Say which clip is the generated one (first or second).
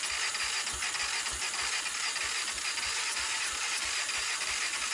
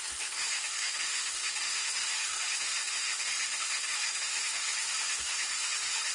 second